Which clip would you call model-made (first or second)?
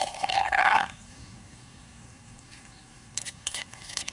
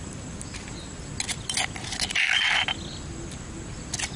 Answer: first